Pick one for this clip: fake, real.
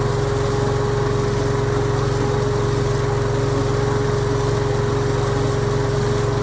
real